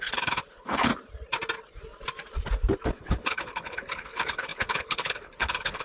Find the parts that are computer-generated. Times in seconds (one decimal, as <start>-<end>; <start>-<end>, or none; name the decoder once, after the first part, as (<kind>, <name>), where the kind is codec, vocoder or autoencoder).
0.0-0.9 (codec, HILCodec); 2.9-5.8